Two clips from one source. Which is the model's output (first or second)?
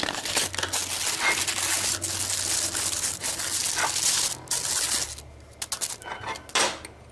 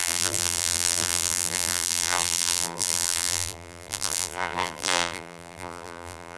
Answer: second